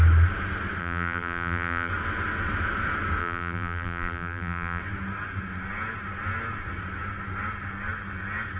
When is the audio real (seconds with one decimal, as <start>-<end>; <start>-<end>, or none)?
0.0-0.8; 1.9-3.2; 4.8-8.6